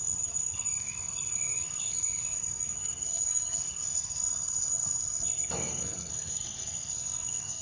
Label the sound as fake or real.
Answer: fake